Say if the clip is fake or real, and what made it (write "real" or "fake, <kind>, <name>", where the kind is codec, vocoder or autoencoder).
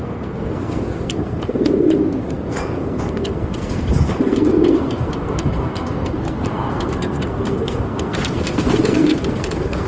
fake, codec, SNAC